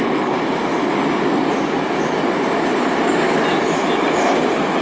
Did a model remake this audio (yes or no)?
no